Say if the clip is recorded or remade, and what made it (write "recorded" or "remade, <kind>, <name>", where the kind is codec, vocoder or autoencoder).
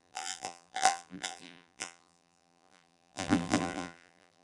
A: remade, vocoder, BigVGAN v2